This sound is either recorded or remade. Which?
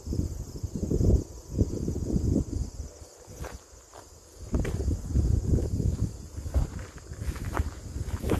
recorded